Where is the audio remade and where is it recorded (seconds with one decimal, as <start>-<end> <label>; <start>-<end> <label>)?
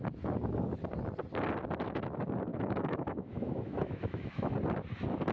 0.0-2.5 recorded; 2.5-4.5 remade; 4.5-5.3 recorded